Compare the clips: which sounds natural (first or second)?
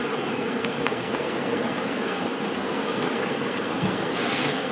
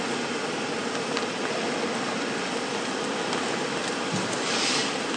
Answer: second